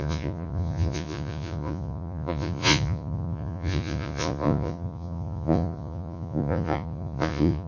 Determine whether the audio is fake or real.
fake